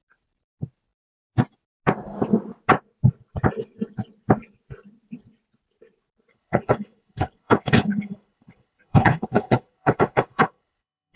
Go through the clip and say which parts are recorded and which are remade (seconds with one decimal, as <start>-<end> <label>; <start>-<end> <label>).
0.0-6.3 recorded; 6.3-11.2 remade